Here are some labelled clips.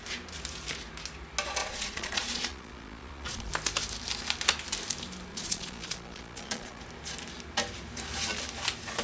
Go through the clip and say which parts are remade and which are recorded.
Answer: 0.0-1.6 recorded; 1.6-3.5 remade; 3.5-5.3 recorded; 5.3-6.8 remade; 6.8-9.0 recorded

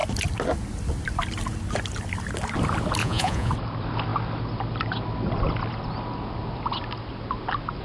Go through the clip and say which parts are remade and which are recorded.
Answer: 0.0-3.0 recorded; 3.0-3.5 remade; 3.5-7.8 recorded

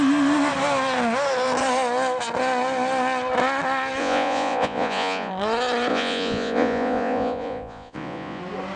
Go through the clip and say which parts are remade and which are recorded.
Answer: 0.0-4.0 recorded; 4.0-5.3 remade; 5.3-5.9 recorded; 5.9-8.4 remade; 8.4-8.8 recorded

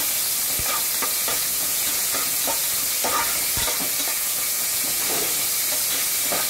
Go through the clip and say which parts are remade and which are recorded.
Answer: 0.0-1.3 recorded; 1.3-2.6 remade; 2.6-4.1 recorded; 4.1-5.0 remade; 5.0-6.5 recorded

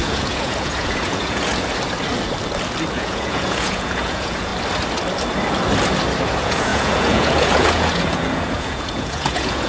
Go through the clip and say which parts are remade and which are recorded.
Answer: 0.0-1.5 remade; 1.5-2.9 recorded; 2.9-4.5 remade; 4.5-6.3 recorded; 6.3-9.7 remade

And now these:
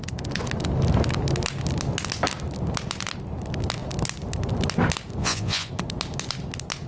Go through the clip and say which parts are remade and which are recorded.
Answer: 0.0-5.2 recorded; 5.2-5.7 remade; 5.7-6.9 recorded

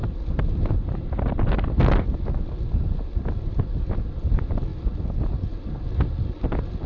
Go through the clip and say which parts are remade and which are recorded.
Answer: 0.0-6.9 recorded